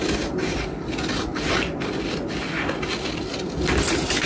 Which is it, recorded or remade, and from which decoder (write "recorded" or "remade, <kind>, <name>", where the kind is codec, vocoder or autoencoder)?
recorded